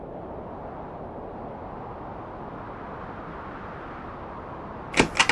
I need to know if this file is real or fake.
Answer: real